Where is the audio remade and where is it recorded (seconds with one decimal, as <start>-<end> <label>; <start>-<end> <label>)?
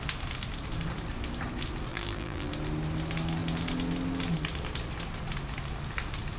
0.0-1.9 recorded; 1.9-2.5 remade; 2.5-6.4 recorded